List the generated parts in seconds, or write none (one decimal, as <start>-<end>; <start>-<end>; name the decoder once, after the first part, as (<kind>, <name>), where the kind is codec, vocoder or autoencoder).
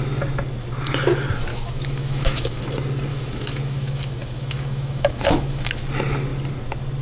1.5-2.6 (autoencoder, DAC-VAE); 3.1-5.7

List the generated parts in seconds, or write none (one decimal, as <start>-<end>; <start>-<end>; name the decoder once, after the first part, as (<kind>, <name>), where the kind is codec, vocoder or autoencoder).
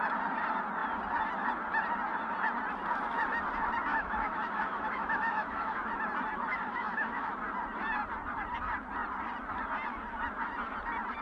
3.9-5.9 (autoencoder, DAC-VAE); 6.5-7.3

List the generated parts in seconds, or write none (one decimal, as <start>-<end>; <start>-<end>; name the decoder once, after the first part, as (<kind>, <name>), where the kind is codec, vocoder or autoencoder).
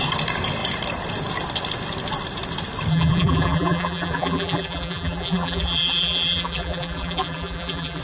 2.9-8.0 (vocoder, BigVGAN v2)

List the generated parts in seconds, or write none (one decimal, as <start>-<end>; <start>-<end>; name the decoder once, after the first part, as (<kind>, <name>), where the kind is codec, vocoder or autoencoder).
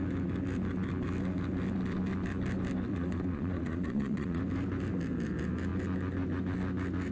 2.9-4.4 (vocoder, Vocos)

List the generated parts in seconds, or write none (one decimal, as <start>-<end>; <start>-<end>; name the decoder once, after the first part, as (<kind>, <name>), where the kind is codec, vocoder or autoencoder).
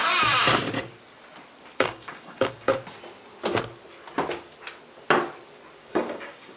1.8-2.7 (codec, DAC); 5.8-6.6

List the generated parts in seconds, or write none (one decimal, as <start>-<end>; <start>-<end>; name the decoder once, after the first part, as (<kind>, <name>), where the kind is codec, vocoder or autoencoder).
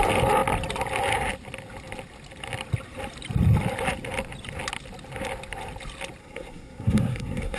6.2-7.6 (codec, SNAC)